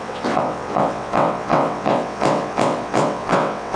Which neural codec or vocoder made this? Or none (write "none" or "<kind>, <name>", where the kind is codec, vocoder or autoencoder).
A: vocoder, WaveNeXt